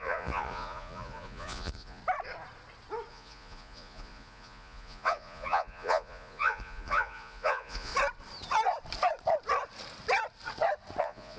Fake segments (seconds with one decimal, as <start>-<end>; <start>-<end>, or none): 0.0-2.0; 3.1-7.9; 11.0-11.4